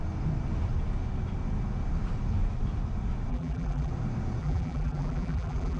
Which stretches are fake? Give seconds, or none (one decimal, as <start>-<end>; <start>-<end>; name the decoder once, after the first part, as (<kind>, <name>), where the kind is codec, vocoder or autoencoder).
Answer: 3.3-3.9 (vocoder, BigVGAN v2); 4.4-5.8